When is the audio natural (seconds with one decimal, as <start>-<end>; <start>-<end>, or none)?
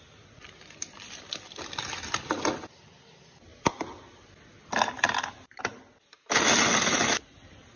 0.0-7.8